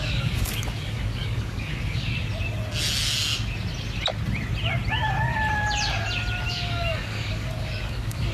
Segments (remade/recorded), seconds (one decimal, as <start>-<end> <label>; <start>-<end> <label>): 0.0-2.1 remade; 2.1-6.5 recorded; 6.5-8.3 remade